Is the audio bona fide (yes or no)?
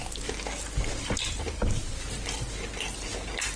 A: yes